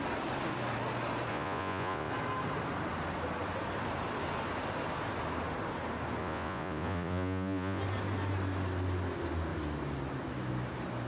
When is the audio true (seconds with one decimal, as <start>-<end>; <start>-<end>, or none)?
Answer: 0.0-1.3; 2.1-6.2; 7.8-11.1

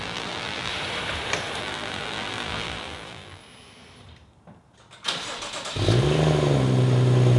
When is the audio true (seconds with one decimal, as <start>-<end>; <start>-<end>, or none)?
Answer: 0.7-1.6; 3.4-7.4